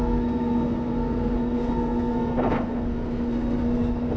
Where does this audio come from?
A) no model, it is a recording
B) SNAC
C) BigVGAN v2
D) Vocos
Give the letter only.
B